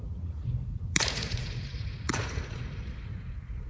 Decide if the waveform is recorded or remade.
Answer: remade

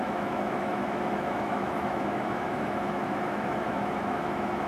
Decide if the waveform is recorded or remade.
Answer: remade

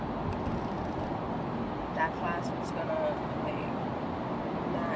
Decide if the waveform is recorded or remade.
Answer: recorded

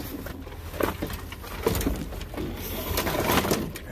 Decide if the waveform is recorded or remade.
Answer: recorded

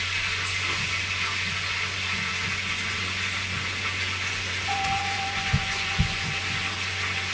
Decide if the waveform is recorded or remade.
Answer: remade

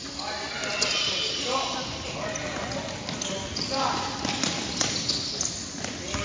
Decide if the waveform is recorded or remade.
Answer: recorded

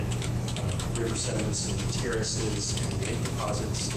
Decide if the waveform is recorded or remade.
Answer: remade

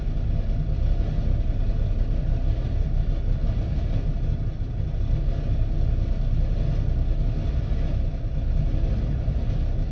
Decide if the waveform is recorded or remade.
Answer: recorded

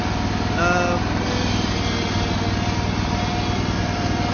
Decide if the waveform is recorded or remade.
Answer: recorded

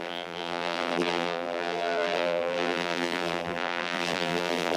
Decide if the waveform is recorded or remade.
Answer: remade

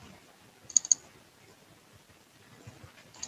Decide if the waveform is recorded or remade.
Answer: recorded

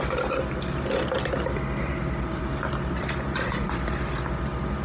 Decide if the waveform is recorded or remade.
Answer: recorded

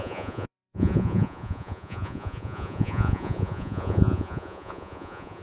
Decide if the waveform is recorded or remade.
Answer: remade